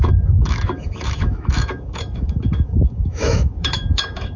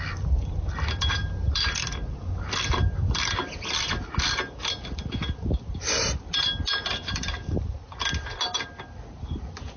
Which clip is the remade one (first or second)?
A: first